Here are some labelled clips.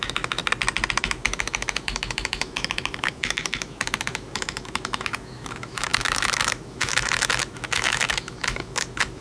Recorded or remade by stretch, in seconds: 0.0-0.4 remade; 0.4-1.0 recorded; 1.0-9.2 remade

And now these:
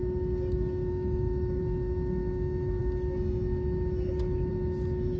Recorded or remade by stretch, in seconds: 0.0-0.9 recorded; 0.9-1.6 remade; 1.6-5.2 recorded

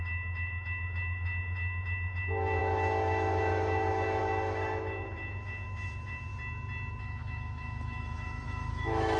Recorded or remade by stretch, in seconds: 0.0-6.3 remade; 6.3-7.0 recorded; 7.0-9.2 remade

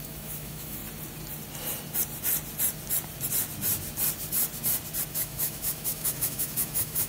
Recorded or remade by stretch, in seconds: 0.0-0.8 remade; 0.8-5.1 recorded; 5.1-7.1 remade

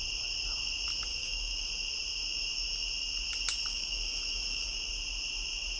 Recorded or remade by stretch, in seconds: 0.0-1.1 recorded; 1.1-1.7 remade; 1.7-3.7 recorded; 3.7-4.9 remade; 4.9-5.8 recorded